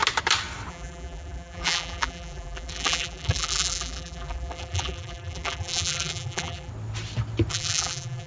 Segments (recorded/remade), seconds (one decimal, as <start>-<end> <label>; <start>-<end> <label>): 0.0-0.7 recorded; 0.7-6.7 remade; 6.7-7.5 recorded; 7.5-8.3 remade